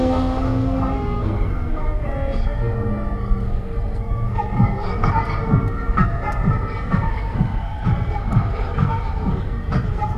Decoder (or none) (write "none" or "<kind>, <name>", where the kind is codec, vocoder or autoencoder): codec, SNAC